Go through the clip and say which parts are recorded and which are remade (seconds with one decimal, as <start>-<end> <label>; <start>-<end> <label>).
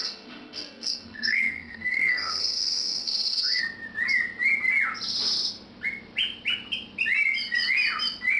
0.0-3.6 remade; 3.6-8.4 recorded